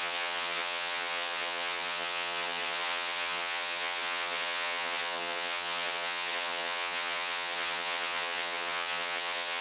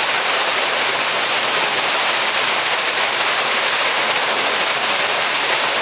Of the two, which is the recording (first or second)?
second